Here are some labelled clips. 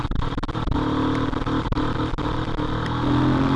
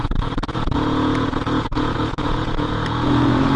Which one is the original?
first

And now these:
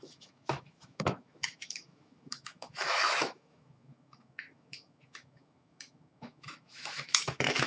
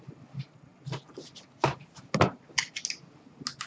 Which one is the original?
second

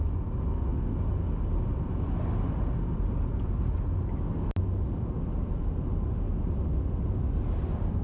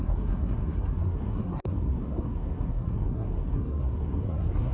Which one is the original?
first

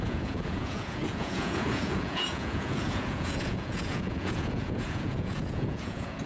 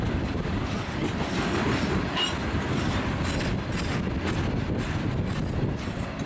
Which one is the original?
second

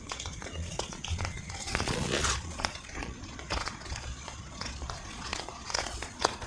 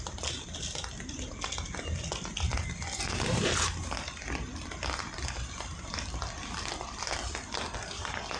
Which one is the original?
second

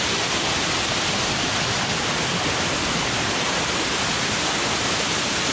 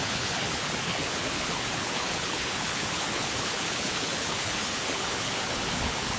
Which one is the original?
first